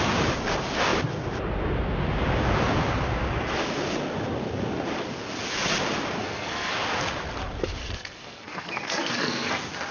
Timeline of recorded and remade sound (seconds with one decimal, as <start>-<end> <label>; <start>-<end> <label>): 0.0-6.2 recorded; 6.2-6.7 remade; 6.7-7.8 recorded; 7.8-9.5 remade; 9.5-9.9 recorded